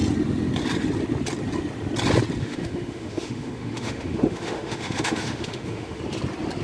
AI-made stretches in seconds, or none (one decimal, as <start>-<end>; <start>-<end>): 2.4-6.0